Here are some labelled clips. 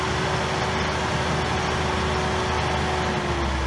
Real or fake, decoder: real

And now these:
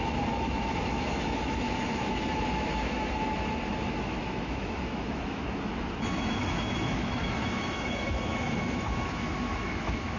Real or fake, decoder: fake, autoencoder, DAC-VAE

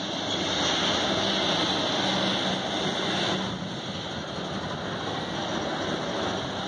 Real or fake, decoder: real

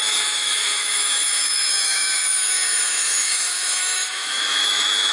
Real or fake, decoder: fake, autoencoder, DAC-VAE